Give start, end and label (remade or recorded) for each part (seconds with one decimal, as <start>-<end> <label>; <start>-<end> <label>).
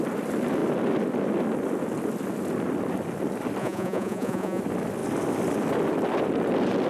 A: 0.0-3.6 recorded; 3.6-4.6 remade; 4.6-6.9 recorded